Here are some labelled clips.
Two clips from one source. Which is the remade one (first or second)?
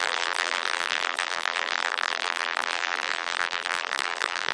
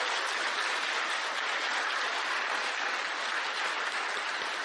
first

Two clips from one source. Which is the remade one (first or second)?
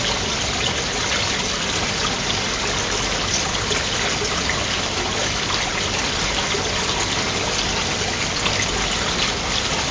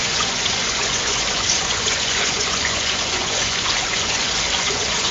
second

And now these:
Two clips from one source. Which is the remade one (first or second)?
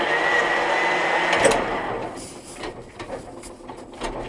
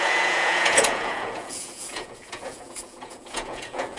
second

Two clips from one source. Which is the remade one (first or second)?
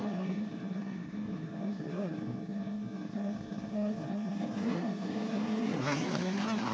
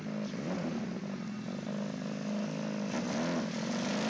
first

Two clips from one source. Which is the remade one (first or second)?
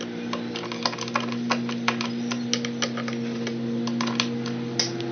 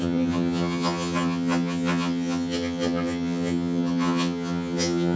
second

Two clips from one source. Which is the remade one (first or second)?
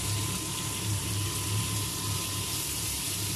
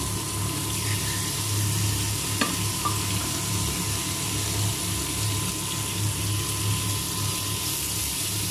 first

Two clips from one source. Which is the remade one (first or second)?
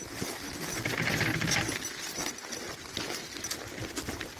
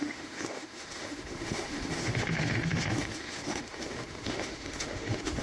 second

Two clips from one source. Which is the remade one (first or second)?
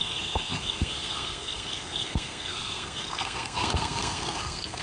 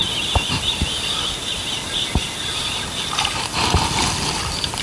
first